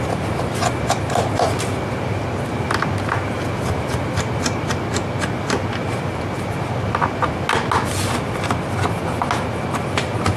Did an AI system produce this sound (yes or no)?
no